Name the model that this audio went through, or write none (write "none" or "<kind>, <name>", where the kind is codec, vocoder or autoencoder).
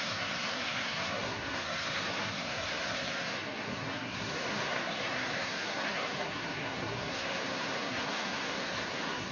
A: codec, SNAC